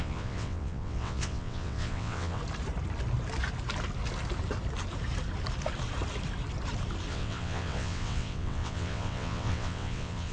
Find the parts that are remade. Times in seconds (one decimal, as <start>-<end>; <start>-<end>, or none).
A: 0.0-2.4; 7.1-10.3